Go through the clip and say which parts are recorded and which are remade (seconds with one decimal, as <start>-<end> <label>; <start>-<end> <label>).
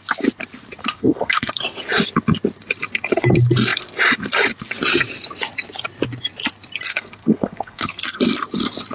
0.0-0.8 recorded; 0.8-1.5 remade; 1.5-6.9 recorded; 6.9-8.0 remade; 8.0-8.9 recorded